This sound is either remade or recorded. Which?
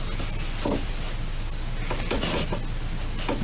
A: recorded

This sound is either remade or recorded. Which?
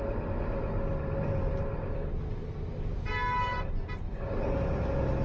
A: recorded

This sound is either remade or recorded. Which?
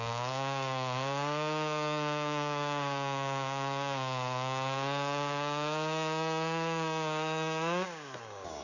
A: remade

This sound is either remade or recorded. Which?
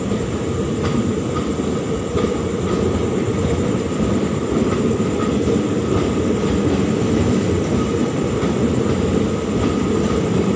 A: recorded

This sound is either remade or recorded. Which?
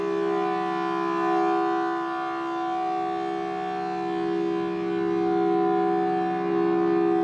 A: recorded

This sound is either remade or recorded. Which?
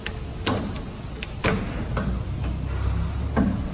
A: recorded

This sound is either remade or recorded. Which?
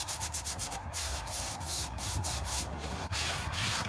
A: remade